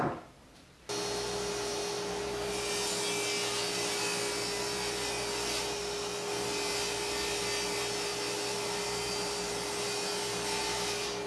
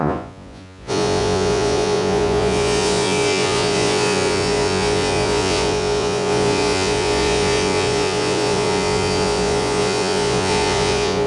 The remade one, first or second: second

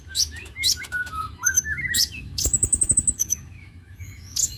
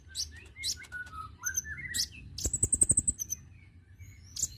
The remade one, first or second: first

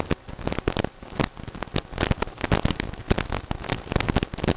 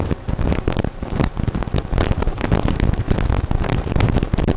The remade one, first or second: second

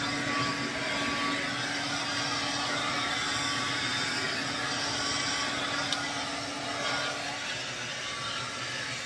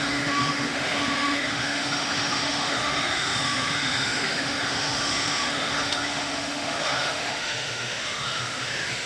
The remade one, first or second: second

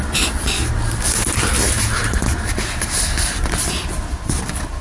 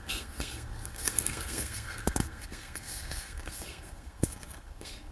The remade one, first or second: second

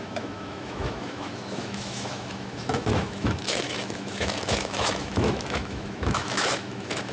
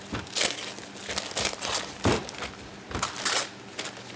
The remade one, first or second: first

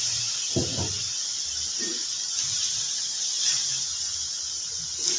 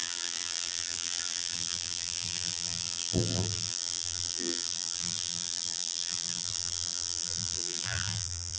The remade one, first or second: second